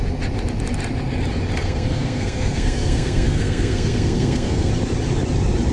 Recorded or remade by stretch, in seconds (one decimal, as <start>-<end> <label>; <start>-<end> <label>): 0.0-1.6 recorded; 1.6-4.7 remade; 4.7-5.7 recorded